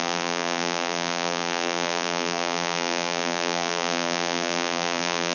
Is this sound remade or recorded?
remade